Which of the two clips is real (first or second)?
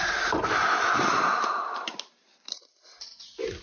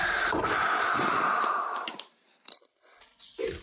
first